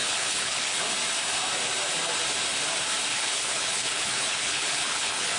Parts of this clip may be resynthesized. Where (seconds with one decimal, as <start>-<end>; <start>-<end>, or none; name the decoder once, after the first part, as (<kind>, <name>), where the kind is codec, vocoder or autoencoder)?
0.0-0.8 (codec, HILCodec); 3.1-5.4